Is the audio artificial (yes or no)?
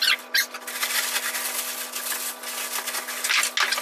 no